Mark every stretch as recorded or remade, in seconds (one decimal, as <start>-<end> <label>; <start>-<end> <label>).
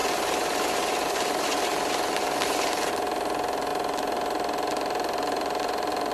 0.0-2.9 remade; 2.9-3.7 recorded; 3.7-6.1 remade